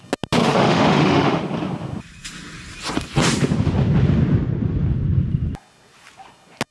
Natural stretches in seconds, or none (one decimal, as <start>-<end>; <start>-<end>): 0.0-0.4; 1.4-6.7